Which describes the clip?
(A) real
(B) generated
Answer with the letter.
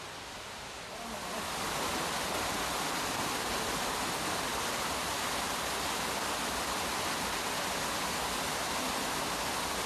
A